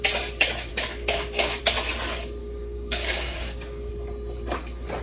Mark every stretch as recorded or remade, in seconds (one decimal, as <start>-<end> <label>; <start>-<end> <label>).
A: 0.0-0.7 recorded; 0.7-1.6 remade; 1.6-2.4 recorded; 2.4-3.9 remade; 3.9-5.0 recorded